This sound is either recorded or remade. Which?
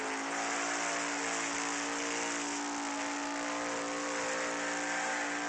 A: recorded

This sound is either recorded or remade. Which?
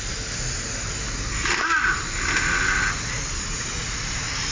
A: remade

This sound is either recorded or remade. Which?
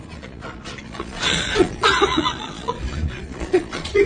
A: remade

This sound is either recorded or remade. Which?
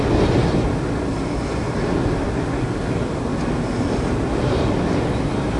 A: recorded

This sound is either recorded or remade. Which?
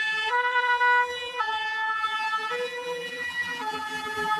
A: remade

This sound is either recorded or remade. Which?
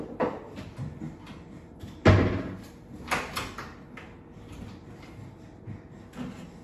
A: recorded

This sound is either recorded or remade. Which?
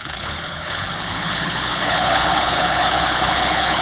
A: remade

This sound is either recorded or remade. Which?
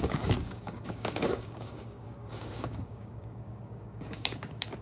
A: remade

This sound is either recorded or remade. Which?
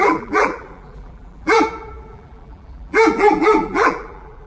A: remade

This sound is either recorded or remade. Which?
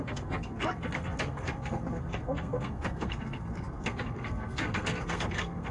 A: remade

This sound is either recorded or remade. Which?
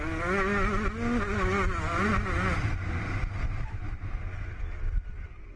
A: recorded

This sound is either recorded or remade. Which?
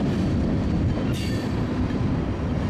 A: recorded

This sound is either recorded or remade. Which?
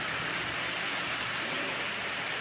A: recorded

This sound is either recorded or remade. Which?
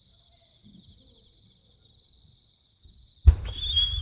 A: recorded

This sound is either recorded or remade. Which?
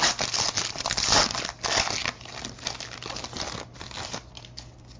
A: recorded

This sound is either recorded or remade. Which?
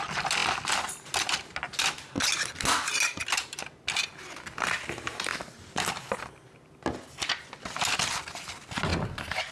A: recorded